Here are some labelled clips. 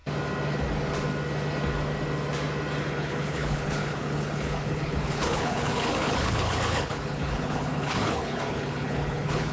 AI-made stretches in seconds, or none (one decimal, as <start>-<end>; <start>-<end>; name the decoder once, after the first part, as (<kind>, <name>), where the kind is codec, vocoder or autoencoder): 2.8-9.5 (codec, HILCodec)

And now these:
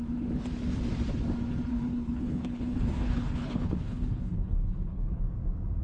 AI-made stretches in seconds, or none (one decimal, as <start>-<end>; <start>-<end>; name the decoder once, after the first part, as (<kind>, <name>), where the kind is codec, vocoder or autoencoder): 1.7-5.2 (codec, HILCodec)

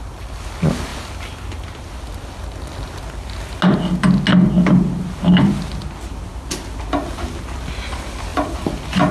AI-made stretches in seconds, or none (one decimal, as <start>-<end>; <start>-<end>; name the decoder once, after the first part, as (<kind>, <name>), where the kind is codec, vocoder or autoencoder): none